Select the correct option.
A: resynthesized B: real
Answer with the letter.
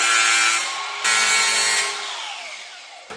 B